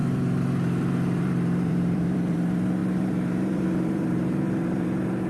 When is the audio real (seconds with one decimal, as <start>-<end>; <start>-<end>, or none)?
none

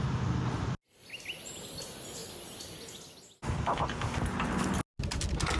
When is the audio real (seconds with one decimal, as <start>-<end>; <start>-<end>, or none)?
0.0-5.6

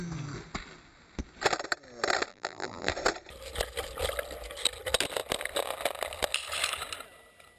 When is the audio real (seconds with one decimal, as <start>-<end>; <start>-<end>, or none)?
0.0-2.3; 2.9-7.6

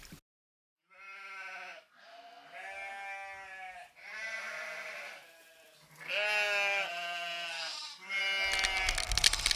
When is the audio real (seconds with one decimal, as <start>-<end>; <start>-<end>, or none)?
0.0-6.9; 8.2-9.6

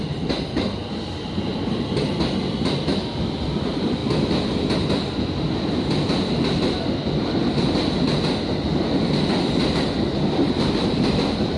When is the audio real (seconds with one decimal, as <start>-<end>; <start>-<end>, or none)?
0.0-11.6

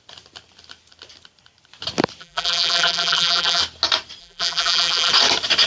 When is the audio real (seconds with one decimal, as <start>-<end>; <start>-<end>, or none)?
0.0-2.2; 3.6-4.2; 5.1-5.7